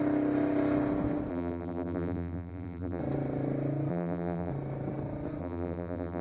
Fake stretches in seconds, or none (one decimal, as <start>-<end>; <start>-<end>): 1.3-3.0; 3.9-4.5; 5.4-6.2

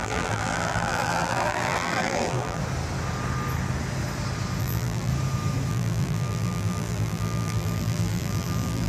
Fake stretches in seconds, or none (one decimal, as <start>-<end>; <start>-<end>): 0.0-2.6; 4.6-5.1; 5.7-8.9

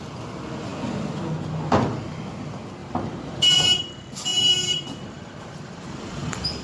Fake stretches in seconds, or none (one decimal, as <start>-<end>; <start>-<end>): 2.8-3.8; 4.3-6.6

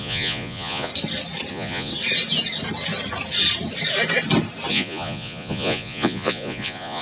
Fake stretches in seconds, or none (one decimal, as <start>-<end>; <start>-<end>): 0.0-0.9; 1.5-1.9; 4.7-7.0

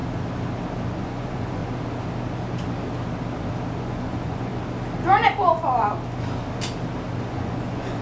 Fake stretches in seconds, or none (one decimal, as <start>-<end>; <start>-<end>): 1.0-1.6; 3.8-4.5; 7.2-8.0

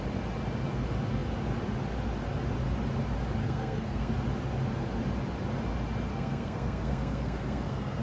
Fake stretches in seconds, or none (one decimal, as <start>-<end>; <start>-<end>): 3.4-4.1; 6.1-8.0

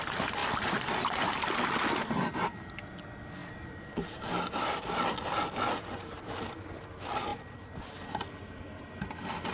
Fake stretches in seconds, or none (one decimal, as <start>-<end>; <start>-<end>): 0.4-1.8; 3.4-5.1; 7.3-8.9